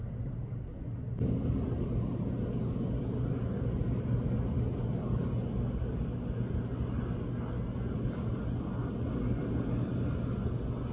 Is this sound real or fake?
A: real